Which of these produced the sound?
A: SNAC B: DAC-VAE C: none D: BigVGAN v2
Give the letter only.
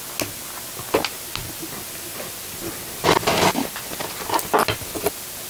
C